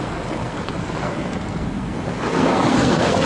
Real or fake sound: fake